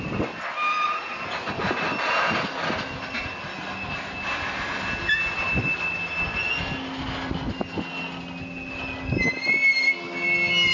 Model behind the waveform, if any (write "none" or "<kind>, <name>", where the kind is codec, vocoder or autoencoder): none